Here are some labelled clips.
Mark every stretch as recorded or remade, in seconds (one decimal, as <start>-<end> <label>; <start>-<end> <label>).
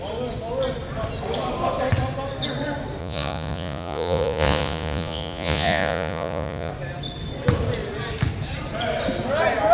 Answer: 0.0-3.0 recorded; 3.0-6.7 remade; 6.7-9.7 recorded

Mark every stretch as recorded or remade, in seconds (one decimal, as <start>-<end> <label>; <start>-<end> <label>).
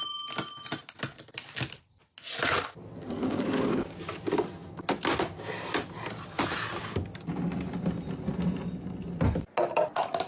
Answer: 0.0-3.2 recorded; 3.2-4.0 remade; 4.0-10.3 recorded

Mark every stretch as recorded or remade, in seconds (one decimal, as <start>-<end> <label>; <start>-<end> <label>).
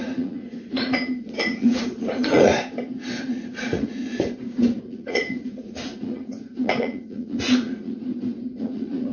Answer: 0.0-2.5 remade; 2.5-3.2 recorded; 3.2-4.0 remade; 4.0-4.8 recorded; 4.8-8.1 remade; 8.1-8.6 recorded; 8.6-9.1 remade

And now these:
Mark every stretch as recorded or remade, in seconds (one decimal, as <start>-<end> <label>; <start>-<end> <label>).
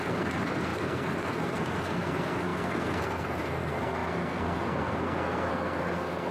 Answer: 0.0-6.3 remade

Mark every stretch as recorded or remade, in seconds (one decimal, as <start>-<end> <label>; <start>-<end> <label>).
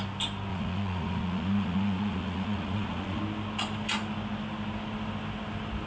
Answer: 0.0-0.5 recorded; 0.5-3.2 remade; 3.2-5.9 recorded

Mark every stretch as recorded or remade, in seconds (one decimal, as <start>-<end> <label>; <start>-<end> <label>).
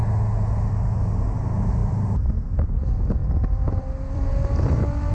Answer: 0.0-1.8 recorded; 1.8-2.7 remade; 2.7-3.2 recorded; 3.2-4.3 remade; 4.3-5.1 recorded